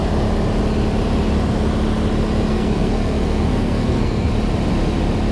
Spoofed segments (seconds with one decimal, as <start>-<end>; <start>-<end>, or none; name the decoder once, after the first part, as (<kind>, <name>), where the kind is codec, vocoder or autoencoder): 2.5-4.3 (codec, SNAC)